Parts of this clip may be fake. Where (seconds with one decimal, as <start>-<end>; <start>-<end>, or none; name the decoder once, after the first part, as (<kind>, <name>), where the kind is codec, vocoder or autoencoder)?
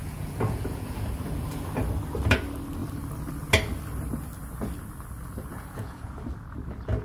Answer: 0.0-1.7 (vocoder, Vocos); 5.5-6.2